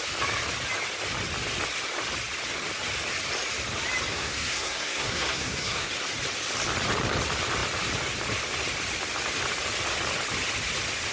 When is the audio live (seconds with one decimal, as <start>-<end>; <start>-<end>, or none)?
0.0-4.1; 5.9-11.1